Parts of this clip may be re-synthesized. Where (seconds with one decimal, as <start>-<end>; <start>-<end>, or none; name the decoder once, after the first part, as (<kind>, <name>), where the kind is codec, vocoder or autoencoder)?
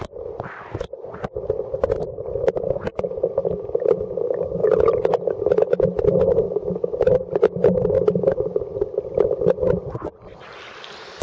none